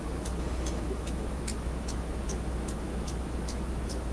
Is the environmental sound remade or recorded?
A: remade